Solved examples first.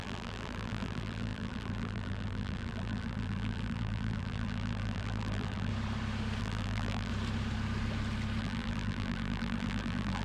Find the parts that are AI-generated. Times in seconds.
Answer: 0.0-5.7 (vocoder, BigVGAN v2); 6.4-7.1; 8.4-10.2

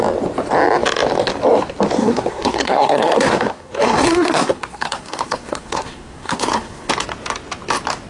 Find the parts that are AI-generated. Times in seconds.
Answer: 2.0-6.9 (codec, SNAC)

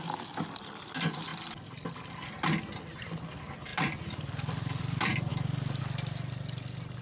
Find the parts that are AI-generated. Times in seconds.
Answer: none